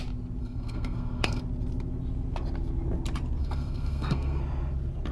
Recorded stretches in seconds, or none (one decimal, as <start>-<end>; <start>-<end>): 0.0-0.4; 1.4-3.4; 4.4-5.1